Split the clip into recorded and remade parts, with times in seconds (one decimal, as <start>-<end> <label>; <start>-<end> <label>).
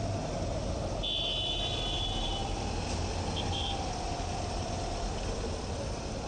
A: 0.0-6.3 recorded